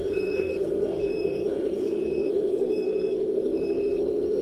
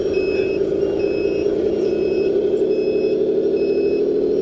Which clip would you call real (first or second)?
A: second